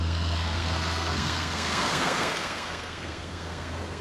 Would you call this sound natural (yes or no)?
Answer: no